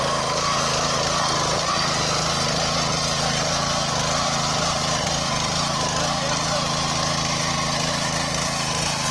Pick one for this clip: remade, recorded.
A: recorded